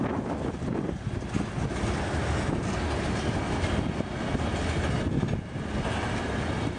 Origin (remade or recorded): recorded